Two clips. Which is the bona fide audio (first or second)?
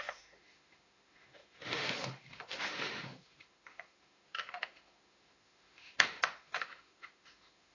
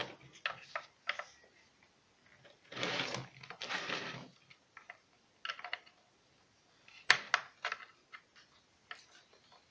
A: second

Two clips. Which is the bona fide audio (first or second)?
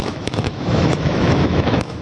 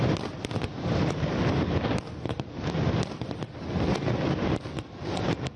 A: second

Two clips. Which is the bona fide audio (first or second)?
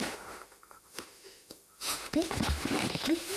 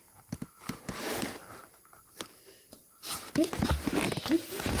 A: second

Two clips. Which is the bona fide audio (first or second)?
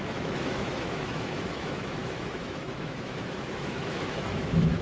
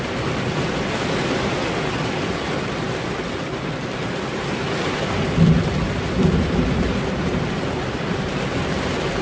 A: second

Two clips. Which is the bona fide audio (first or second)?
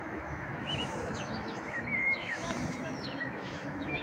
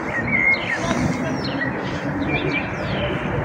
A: second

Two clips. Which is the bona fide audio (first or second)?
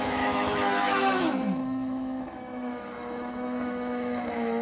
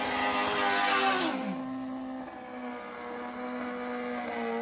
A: second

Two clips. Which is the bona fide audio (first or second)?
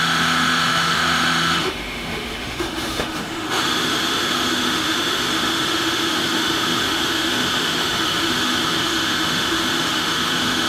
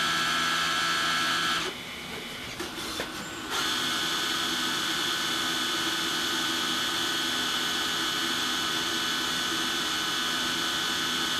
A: second